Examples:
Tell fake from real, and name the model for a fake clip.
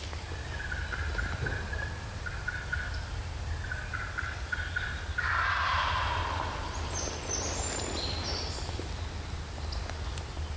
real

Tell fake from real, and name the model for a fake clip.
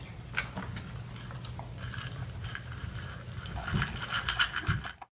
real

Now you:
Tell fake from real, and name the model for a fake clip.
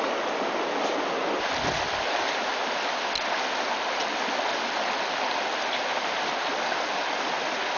real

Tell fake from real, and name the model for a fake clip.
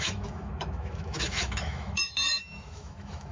fake, autoencoder, DAC-VAE